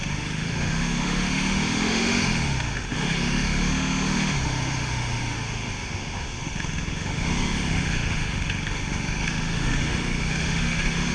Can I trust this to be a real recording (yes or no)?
no